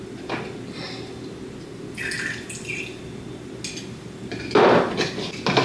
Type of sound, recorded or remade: recorded